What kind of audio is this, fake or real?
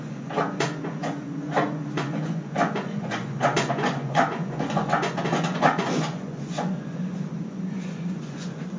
fake